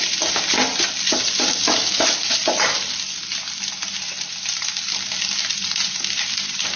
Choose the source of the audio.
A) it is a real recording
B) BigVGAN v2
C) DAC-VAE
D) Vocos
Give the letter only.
A